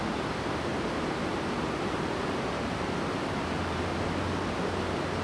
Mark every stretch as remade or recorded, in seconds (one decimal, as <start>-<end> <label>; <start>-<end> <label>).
0.0-0.7 recorded; 0.7-3.8 remade; 3.8-5.2 recorded